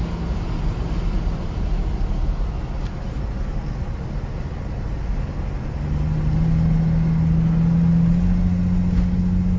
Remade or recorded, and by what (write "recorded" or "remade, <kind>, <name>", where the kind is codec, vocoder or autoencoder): recorded